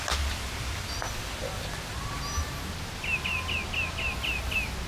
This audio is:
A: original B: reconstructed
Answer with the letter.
A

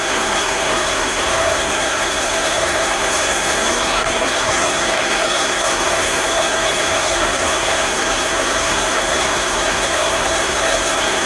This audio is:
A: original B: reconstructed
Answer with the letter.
B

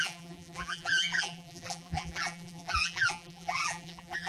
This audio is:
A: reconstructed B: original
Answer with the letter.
A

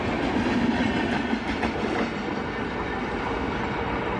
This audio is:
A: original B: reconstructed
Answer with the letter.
A